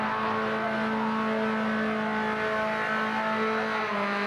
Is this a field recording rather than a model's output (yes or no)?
yes